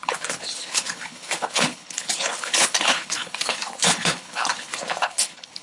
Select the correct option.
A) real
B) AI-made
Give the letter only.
B